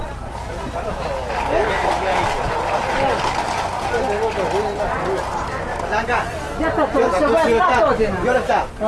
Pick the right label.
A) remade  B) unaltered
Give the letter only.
B